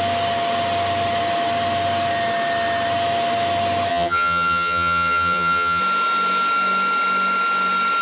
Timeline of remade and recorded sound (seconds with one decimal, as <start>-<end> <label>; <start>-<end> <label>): 0.0-3.9 recorded; 3.9-5.8 remade; 5.8-8.0 recorded